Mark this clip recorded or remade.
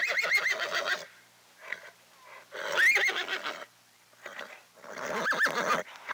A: recorded